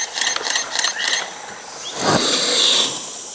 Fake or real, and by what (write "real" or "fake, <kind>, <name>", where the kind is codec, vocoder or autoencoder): real